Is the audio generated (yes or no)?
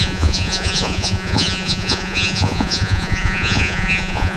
yes